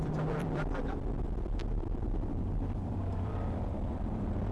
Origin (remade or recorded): remade